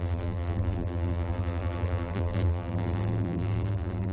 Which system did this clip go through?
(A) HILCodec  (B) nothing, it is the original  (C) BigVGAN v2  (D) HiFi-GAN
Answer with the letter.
C